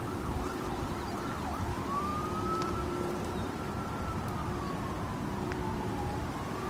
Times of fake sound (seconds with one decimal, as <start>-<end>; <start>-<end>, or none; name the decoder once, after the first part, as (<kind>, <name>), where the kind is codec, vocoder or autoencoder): 0.0-4.4 (vocoder, BigVGAN v2); 5.4-6.7